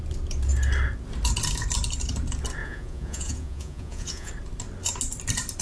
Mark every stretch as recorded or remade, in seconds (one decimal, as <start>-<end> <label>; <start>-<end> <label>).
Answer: 0.0-2.6 recorded; 2.6-4.3 remade; 4.3-5.6 recorded